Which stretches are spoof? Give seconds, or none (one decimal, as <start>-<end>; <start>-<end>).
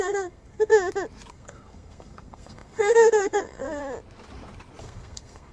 0.0-0.7; 1.3-3.8; 4.8-5.5